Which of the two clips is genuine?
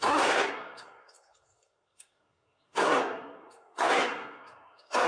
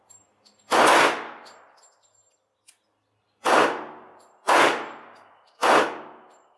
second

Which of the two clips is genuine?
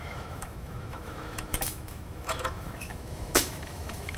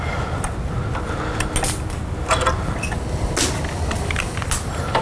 second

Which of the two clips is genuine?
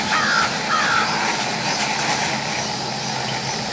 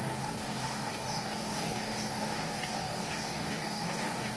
first